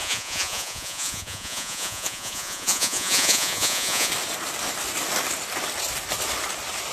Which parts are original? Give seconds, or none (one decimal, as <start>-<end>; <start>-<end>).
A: 4.1-6.9